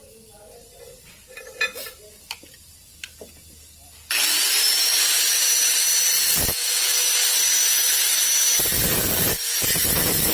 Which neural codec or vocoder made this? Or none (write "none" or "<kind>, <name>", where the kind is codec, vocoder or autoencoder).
none